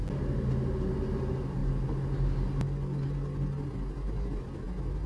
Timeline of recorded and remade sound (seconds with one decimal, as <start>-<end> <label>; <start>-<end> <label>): 0.0-5.1 recorded